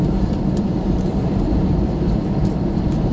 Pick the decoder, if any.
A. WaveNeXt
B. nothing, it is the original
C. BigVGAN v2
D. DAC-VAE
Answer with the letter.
C